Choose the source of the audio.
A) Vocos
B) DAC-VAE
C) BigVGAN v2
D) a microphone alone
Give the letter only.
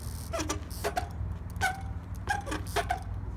D